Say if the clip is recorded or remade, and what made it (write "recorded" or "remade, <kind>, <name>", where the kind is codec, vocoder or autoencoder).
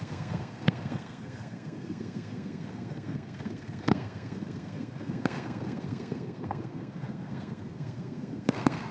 remade, codec, SNAC